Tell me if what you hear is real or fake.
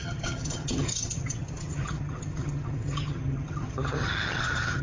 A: fake